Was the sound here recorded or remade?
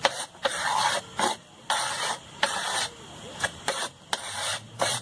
remade